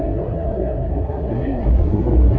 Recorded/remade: remade